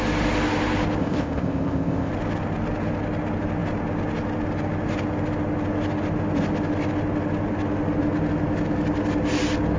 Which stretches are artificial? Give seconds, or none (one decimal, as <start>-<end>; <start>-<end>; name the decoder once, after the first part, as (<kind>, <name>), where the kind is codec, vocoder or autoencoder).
1.0-2.1 (codec, ZipCodec)